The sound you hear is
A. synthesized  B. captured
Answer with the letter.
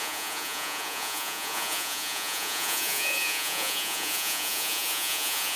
A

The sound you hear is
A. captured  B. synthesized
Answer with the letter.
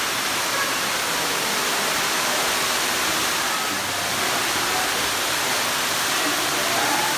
A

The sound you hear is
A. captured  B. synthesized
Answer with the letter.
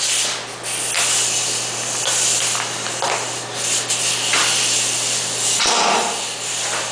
A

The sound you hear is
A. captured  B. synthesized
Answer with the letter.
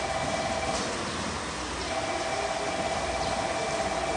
A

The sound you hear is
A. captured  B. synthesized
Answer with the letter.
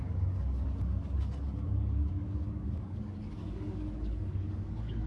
B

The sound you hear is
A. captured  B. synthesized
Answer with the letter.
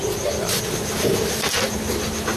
A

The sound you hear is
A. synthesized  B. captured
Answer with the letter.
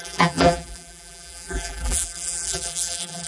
A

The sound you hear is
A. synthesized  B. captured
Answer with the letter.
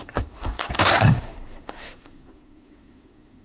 A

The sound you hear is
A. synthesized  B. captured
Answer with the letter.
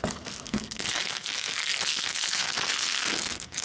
A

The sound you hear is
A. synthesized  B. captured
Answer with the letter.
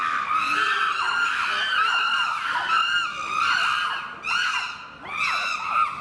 B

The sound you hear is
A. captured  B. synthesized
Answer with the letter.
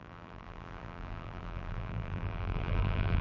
B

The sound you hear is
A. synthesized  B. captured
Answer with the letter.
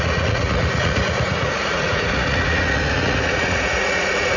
A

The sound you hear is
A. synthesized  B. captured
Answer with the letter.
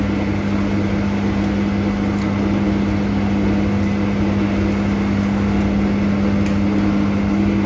B